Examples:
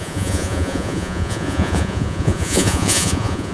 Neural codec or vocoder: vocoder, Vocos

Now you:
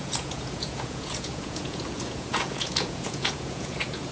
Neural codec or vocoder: vocoder, Vocos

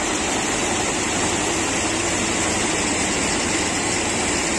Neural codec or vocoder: none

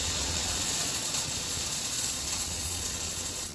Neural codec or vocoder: vocoder, Vocos